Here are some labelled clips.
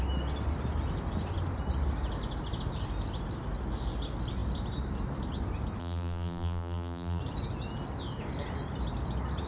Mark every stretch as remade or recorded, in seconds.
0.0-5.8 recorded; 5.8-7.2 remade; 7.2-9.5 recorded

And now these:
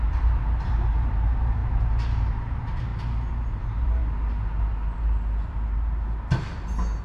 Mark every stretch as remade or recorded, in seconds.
0.0-2.9 remade; 2.9-3.6 recorded; 3.6-4.0 remade; 4.0-7.0 recorded

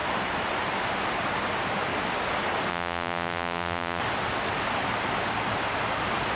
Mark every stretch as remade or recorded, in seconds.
0.0-2.7 recorded; 2.7-4.0 remade; 4.0-6.4 recorded

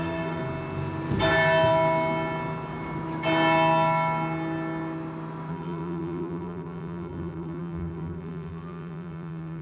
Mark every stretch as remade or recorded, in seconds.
0.0-0.4 remade; 0.4-5.5 recorded; 5.5-9.6 remade

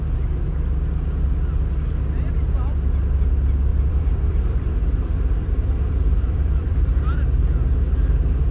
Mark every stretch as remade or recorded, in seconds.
0.0-3.7 recorded; 3.7-6.9 remade; 6.9-8.5 recorded